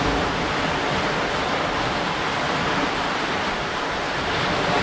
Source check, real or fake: real